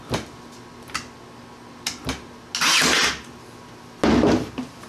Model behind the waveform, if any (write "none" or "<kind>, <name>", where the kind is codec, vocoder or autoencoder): none